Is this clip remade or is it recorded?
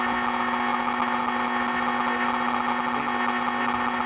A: recorded